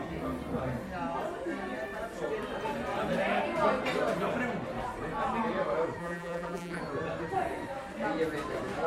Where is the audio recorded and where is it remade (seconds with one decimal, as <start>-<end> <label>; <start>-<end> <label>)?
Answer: 0.0-6.0 recorded; 6.0-6.8 remade; 6.8-8.9 recorded